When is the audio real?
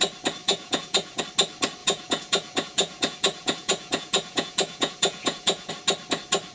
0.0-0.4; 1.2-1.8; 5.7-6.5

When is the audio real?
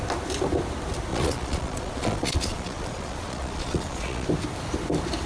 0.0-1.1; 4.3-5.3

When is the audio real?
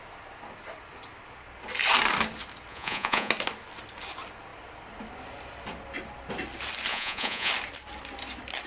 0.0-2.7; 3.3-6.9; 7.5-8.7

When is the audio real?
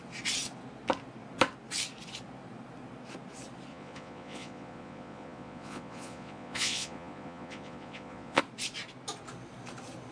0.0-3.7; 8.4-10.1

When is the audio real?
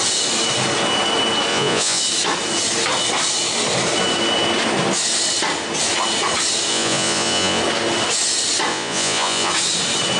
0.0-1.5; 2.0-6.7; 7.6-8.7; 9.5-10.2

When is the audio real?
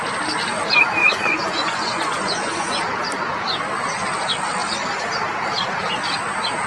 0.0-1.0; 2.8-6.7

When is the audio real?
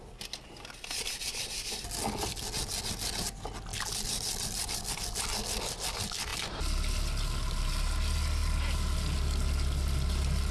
0.0-10.5